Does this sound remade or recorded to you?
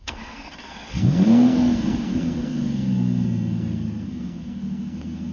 remade